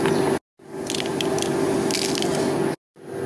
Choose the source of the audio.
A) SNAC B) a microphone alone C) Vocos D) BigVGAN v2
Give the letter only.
B